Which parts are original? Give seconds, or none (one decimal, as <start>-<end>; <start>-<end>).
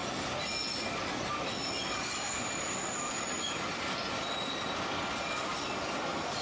0.0-6.4